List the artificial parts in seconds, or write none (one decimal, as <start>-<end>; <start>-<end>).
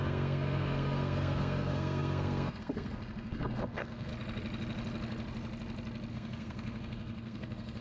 0.0-4.1; 6.1-7.8